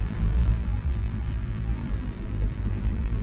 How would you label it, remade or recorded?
remade